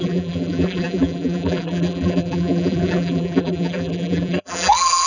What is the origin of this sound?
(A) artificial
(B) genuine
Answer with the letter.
A